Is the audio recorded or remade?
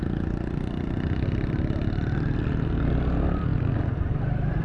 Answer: recorded